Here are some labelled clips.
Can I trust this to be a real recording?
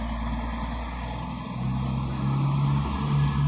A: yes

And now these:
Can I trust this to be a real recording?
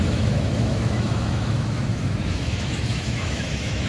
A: no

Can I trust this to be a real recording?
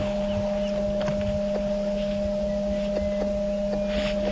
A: yes